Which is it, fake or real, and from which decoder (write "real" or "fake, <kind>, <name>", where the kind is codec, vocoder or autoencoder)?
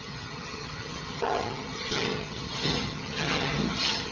fake, vocoder, HiFi-GAN